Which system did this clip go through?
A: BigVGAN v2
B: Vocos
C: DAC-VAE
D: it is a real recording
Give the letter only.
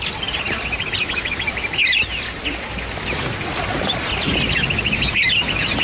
D